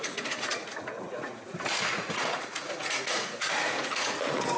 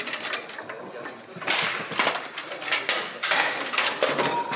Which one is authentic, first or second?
second